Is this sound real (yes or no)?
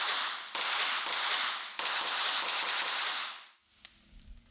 yes